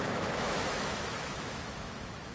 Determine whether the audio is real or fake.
fake